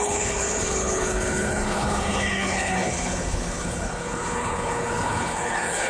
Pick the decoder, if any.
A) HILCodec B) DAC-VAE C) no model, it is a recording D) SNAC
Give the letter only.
A